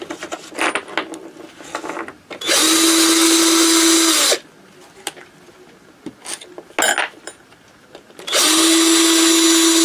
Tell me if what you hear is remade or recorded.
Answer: recorded